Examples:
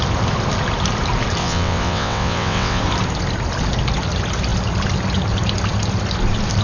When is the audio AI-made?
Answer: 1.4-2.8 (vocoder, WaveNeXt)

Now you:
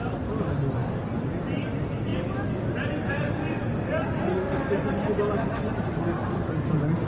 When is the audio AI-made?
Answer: 6.2-7.1 (vocoder, BigVGAN v2)

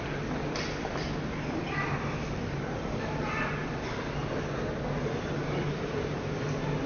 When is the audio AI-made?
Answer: none

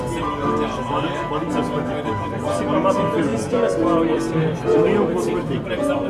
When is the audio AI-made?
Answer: 3.3-6.1 (vocoder, BigVGAN v2)

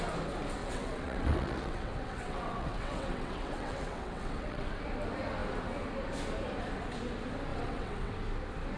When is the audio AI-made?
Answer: 0.6-4.8 (vocoder, WaveNeXt); 7.5-8.1

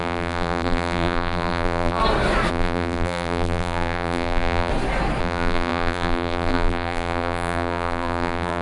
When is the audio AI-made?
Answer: 0.0-2.0 (vocoder, BigVGAN v2); 2.5-4.7; 5.2-8.6

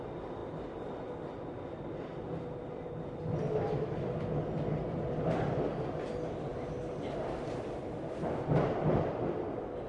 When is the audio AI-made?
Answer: none